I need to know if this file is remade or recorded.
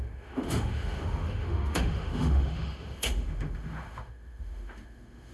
remade